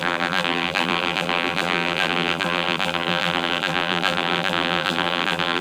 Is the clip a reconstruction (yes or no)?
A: yes